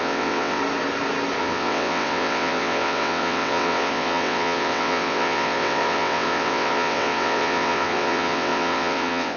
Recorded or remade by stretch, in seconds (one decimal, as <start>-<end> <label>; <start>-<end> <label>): 0.0-0.6 remade; 0.6-1.4 recorded; 1.4-9.4 remade